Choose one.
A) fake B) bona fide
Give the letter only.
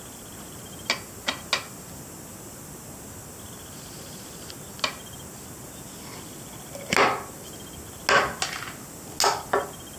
B